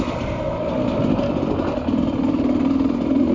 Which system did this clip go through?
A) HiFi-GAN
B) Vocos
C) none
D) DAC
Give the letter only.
C